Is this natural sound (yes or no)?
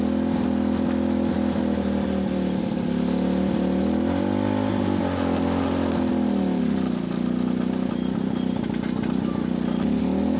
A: yes